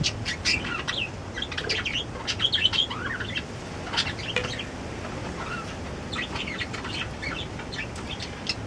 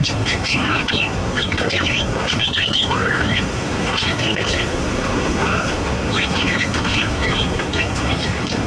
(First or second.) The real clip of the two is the first